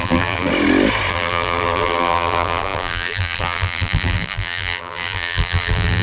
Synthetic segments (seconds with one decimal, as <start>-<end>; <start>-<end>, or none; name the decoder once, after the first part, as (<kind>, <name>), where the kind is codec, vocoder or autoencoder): 0.0-0.5 (vocoder, BigVGAN v2); 1.1-6.0